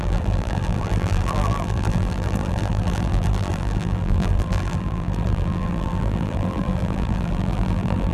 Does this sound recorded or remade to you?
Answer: remade